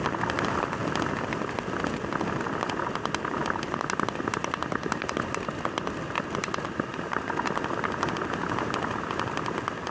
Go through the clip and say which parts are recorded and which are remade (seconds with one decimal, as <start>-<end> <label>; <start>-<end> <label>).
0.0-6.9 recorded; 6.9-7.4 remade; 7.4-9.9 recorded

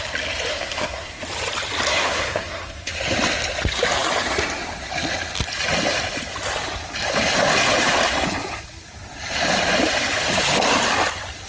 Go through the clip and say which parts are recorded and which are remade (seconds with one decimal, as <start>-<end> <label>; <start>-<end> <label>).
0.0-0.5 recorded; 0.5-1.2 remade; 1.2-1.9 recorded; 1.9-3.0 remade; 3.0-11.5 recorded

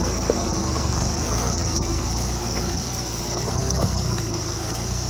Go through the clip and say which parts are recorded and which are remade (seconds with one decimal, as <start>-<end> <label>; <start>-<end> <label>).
0.0-5.1 remade

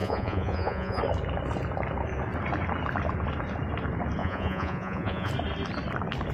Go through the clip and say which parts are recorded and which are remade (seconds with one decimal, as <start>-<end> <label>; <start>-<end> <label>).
0.0-1.0 remade; 1.0-4.2 recorded; 4.2-5.3 remade; 5.3-6.3 recorded

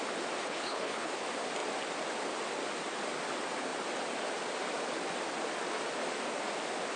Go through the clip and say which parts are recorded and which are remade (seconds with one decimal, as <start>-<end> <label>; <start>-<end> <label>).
0.0-0.4 recorded; 0.4-1.1 remade; 1.1-7.0 recorded

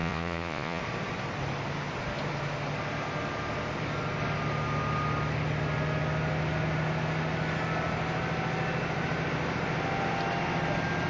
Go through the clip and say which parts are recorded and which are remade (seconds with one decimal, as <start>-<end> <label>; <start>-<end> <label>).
0.0-0.8 remade; 0.8-11.1 recorded